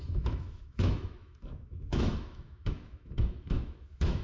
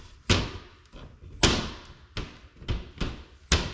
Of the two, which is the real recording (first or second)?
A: second